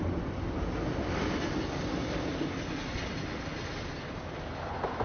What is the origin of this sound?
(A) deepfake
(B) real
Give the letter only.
B